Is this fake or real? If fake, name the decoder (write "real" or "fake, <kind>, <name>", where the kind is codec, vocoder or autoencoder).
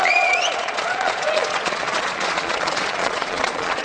fake, vocoder, Vocos